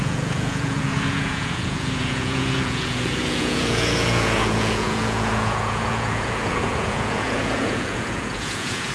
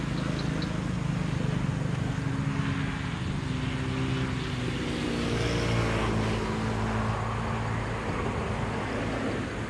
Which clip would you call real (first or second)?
second